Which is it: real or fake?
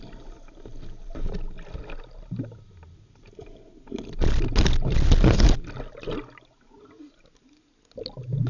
real